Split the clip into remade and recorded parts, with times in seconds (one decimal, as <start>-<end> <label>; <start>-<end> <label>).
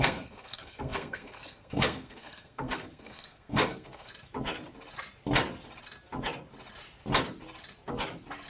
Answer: 0.0-4.1 remade; 4.1-8.5 recorded